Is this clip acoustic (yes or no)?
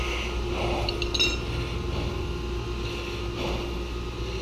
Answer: yes